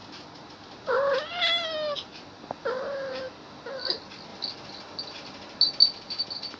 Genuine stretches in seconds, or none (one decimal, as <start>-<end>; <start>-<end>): 0.0-6.6